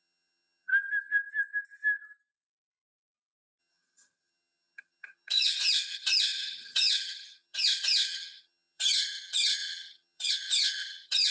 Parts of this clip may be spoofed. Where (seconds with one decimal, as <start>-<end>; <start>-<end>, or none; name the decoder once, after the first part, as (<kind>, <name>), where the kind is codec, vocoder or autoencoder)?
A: 0.0-0.7 (vocoder, HiFi-GAN); 3.6-11.3